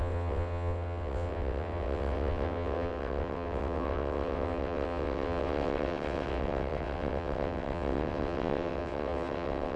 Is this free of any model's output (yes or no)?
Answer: no